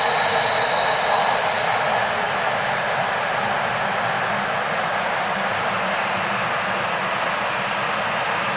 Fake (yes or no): no